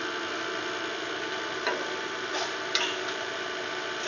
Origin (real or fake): real